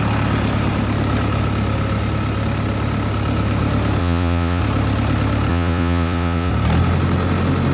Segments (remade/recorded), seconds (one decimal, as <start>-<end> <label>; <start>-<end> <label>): 0.0-4.0 recorded; 4.0-4.6 remade; 4.6-5.5 recorded; 5.5-6.5 remade; 6.5-7.7 recorded